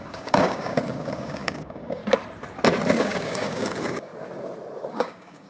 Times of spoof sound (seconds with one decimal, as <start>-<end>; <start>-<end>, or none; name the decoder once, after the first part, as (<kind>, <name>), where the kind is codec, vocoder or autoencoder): 0.0-2.0 (codec, DAC); 3.0-4.1; 4.9-5.5